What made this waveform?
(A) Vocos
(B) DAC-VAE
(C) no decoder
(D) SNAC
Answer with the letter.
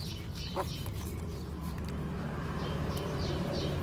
C